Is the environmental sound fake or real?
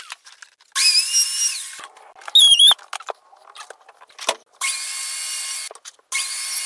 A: real